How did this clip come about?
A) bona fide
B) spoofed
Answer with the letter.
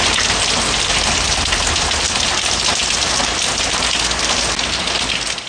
A